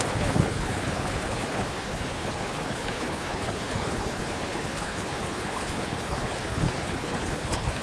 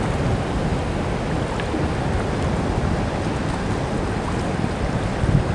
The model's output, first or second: first